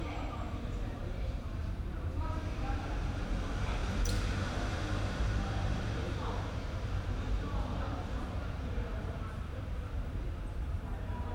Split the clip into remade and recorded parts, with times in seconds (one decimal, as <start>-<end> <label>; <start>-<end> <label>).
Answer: 0.0-11.3 remade